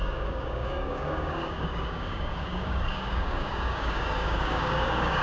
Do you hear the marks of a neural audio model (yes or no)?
yes